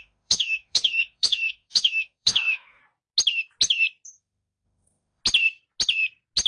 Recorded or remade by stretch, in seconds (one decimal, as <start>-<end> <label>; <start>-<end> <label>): 0.0-2.8 remade; 2.8-4.1 recorded; 4.1-5.2 remade; 5.2-6.5 recorded